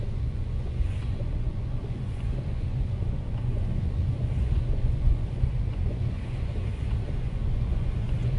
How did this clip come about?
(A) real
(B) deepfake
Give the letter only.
B